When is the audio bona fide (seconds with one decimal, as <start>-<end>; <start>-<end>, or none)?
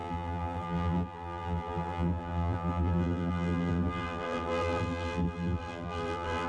none